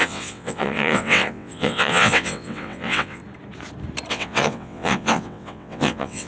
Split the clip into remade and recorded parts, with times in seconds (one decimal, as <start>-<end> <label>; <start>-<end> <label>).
0.0-3.2 remade; 3.2-4.1 recorded; 4.1-6.3 remade